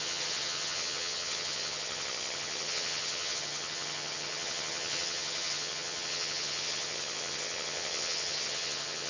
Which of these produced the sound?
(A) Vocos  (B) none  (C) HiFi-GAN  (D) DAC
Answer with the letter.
C